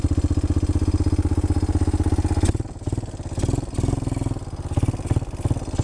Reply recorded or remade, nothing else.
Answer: recorded